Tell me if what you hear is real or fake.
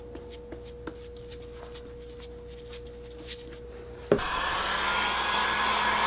real